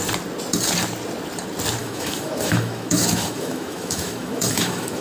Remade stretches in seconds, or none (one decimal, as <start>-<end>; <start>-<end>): 1.8-5.0